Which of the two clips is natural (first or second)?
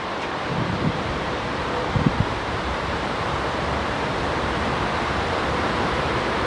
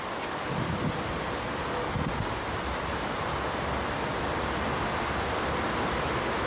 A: second